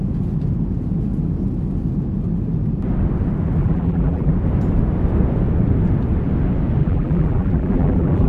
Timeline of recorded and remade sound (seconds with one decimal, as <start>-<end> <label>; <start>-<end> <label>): 0.0-3.6 recorded; 3.6-4.3 remade; 4.3-6.8 recorded; 6.8-8.3 remade